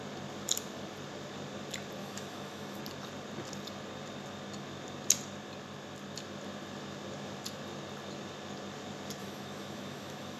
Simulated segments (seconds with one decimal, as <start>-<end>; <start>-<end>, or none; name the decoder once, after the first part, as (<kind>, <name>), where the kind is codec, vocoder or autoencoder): 2.0-2.8 (autoencoder, DAC-VAE); 9.2-10.4